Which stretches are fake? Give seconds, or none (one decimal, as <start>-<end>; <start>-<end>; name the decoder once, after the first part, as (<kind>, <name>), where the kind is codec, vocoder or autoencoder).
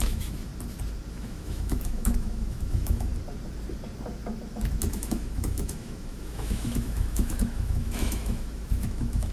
0.0-0.5 (autoencoder, DAC-VAE); 1.1-3.1; 4.9-9.3